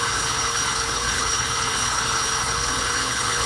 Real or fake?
fake